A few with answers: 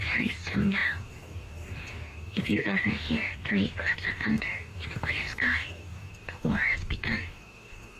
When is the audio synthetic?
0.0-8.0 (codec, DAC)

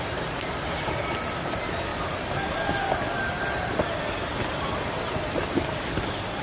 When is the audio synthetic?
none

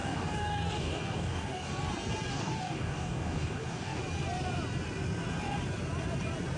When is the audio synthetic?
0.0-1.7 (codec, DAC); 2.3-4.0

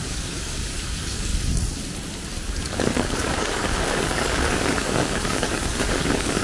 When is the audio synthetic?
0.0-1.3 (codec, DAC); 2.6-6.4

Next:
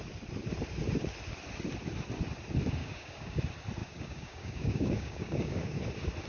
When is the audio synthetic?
2.8-3.4 (codec, DAC); 3.8-5.8

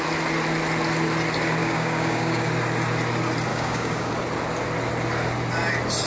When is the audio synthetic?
1.6-2.5 (codec, DAC); 3.5-4.1